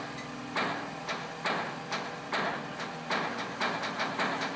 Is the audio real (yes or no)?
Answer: yes